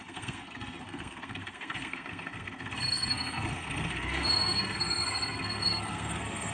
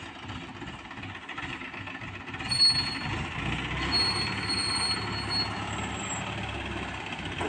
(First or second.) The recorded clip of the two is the second